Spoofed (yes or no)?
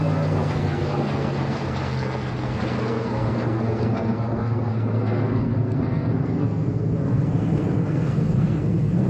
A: yes